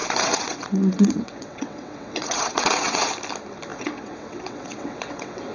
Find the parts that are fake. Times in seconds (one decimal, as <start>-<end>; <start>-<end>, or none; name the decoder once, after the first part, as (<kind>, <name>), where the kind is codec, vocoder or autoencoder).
0.0-3.1 (vocoder, WaveNeXt); 3.7-5.5